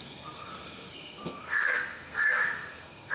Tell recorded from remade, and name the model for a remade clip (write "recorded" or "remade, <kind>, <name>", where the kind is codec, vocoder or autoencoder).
remade, codec, SNAC